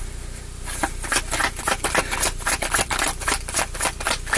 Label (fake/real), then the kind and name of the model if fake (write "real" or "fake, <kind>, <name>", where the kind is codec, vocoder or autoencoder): real